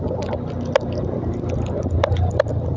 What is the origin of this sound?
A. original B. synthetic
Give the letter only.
A